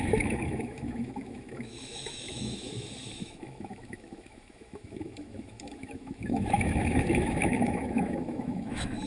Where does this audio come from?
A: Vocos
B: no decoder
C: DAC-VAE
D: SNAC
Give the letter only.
C